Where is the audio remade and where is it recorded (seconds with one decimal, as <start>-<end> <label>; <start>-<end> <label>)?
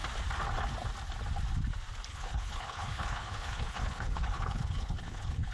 0.0-2.1 recorded; 2.1-5.5 remade